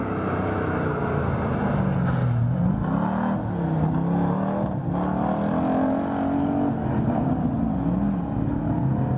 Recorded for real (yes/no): yes